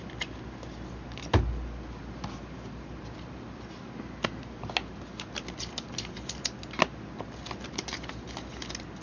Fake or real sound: real